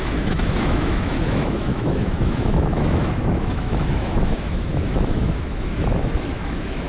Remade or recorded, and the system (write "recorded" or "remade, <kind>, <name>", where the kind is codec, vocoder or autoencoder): remade, autoencoder, DAC-VAE